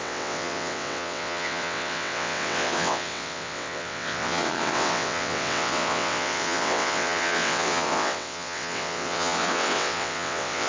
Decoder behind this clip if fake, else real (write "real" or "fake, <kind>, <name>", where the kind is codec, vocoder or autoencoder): fake, vocoder, WaveNeXt